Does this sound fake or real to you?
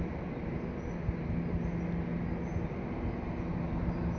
real